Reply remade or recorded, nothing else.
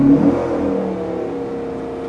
recorded